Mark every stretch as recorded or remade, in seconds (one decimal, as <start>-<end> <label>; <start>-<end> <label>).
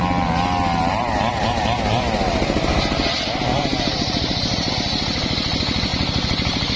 0.0-3.5 recorded; 3.5-4.7 remade; 4.7-5.9 recorded; 5.9-6.8 remade